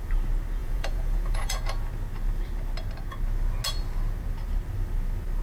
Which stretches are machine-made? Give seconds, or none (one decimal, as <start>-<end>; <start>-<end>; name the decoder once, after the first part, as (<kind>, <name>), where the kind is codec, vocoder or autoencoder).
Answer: 0.6-1.6 (vocoder, Vocos)